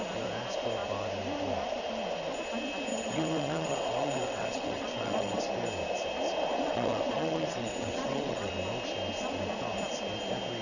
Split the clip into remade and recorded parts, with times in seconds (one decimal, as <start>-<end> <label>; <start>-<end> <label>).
0.0-2.9 recorded; 2.9-5.4 remade; 5.4-6.5 recorded; 6.5-8.5 remade; 8.5-10.6 recorded